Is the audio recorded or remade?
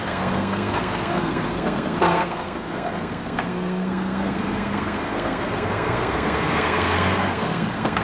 remade